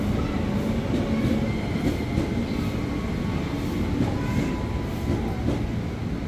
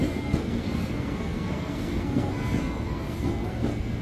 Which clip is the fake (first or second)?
second